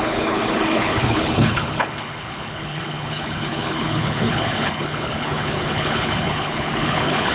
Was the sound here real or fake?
fake